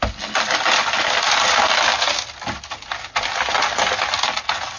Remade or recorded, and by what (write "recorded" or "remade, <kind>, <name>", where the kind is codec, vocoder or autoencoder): recorded